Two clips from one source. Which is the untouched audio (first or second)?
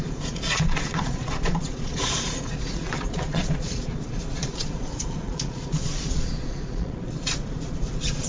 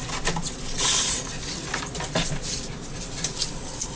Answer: second